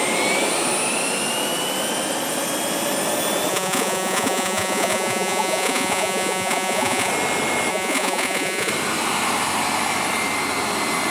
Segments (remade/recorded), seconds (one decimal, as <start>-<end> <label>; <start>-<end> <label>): 0.0-3.5 recorded; 3.5-7.1 remade; 7.1-7.7 recorded; 7.7-8.7 remade; 8.7-11.1 recorded